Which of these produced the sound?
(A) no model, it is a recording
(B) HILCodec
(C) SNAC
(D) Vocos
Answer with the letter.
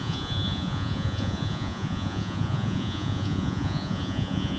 D